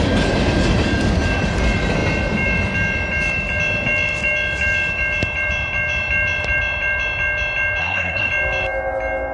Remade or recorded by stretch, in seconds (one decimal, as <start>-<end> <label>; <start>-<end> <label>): 0.0-7.8 recorded; 7.8-8.3 remade; 8.3-9.3 recorded